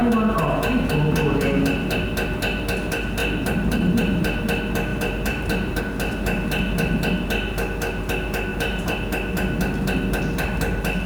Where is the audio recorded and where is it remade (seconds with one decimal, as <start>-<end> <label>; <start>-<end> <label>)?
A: 0.0-3.2 recorded; 3.2-4.4 remade; 4.4-4.9 recorded; 4.9-5.8 remade; 5.8-8.5 recorded; 8.5-9.0 remade; 9.0-11.1 recorded